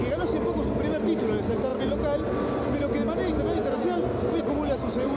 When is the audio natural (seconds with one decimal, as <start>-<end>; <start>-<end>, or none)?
0.0-5.2